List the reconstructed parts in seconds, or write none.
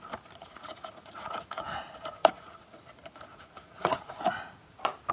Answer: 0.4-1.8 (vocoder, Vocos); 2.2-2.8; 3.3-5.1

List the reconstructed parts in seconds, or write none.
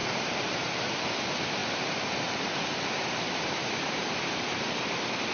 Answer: 0.0-1.0 (vocoder, BigVGAN v2); 1.6-4.1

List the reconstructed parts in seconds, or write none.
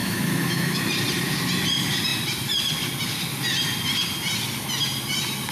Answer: 0.0-0.8 (autoencoder, DAC-VAE)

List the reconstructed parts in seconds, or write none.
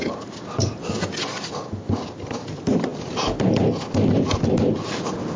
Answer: none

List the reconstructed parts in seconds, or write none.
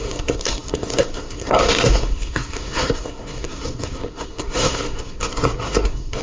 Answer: 0.0-6.2 (codec, SNAC)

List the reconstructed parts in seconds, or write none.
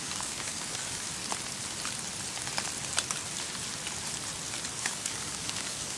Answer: 0.0-1.1 (codec, DAC); 4.7-6.0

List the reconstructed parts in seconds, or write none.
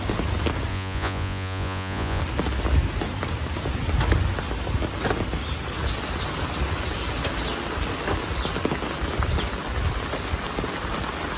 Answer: 0.7-2.2 (vocoder, Vocos)